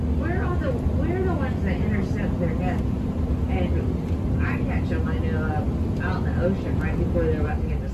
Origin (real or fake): real